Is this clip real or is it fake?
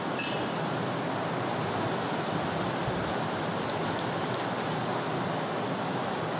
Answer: real